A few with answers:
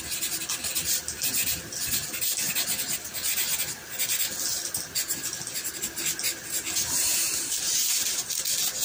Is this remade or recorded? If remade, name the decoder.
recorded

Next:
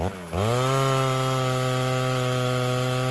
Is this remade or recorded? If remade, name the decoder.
recorded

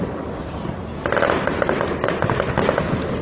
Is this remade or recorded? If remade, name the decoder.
recorded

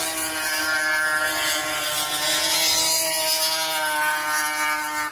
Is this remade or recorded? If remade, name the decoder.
recorded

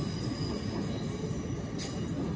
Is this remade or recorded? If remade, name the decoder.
recorded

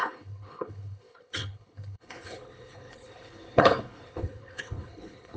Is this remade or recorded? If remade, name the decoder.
remade, codec, HILCodec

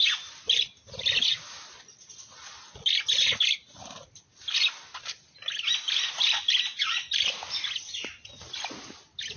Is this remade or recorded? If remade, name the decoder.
recorded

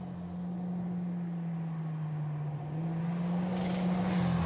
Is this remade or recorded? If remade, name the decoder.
recorded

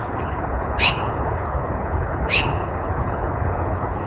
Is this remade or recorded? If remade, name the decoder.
remade, codec, HILCodec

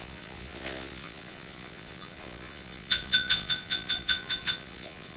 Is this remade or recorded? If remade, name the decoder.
remade, vocoder, Vocos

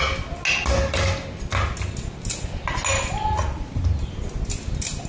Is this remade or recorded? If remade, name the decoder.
recorded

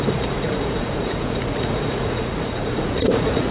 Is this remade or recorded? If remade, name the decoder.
remade, vocoder, Vocos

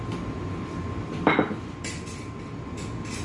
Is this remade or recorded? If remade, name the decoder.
remade, vocoder, BigVGAN v2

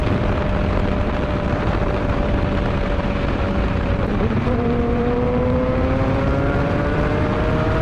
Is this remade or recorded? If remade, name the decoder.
remade, vocoder, BigVGAN v2